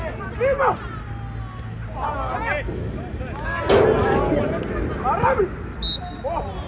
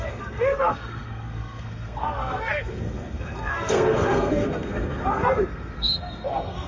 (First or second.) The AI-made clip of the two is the second